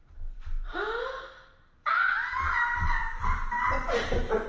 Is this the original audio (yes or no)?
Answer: yes